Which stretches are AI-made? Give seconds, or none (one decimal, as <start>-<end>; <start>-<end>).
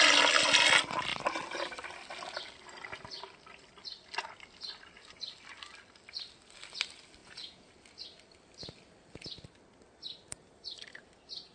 7.2-7.7